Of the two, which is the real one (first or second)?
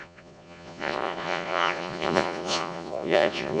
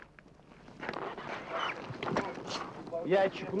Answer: second